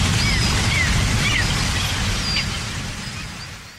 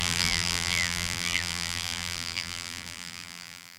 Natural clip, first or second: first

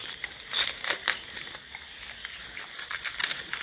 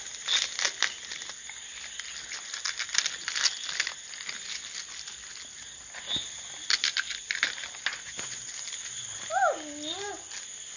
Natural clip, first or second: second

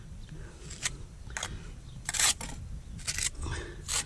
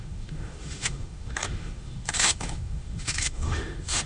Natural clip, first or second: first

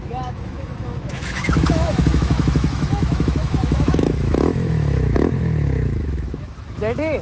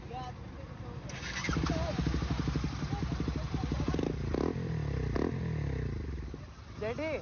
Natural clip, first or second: second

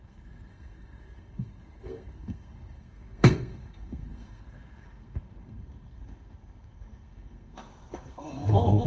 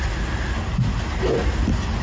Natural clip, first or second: second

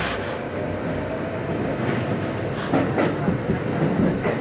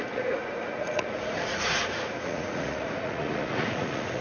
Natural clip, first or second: first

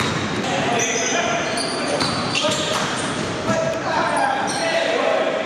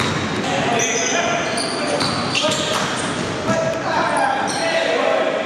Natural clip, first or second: second